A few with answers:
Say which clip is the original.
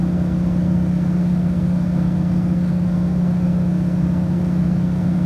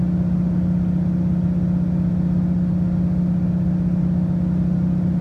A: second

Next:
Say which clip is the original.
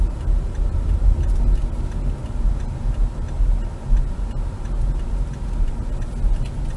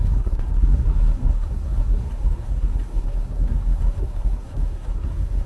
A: first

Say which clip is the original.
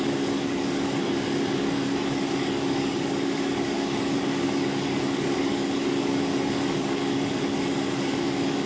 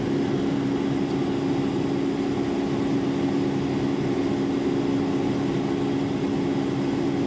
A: second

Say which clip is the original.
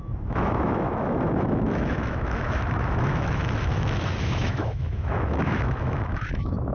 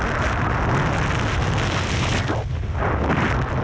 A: second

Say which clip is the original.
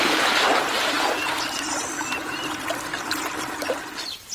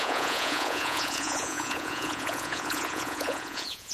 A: first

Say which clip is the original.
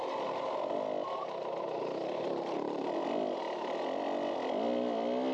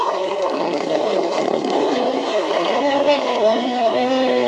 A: first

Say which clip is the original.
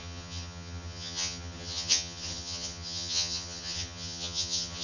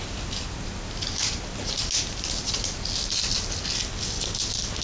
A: second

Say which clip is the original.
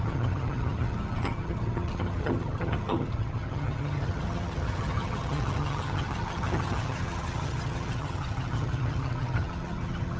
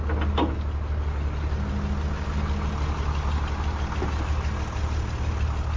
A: second